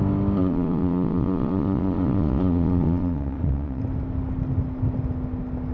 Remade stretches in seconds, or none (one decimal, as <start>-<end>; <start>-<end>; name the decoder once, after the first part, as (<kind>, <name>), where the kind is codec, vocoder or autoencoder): 0.4-3.8 (vocoder, Vocos)